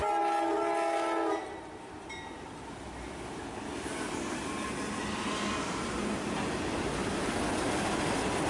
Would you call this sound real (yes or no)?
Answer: yes